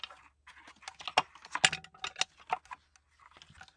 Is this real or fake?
real